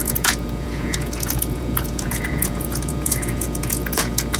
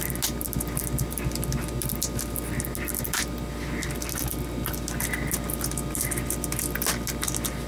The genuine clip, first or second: second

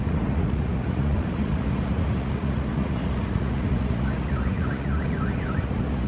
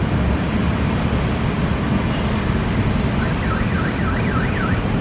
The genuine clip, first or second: second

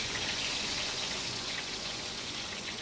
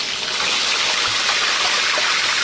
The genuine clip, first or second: second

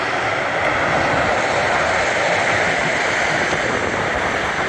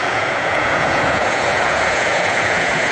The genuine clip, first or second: first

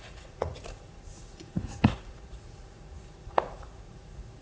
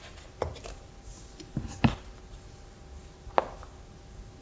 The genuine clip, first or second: second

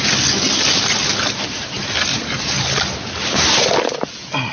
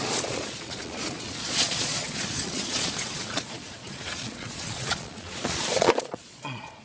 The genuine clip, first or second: first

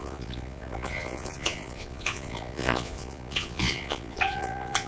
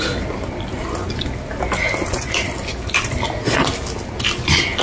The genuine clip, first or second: second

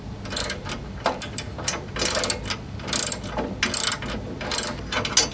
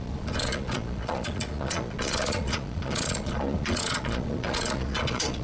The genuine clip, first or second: first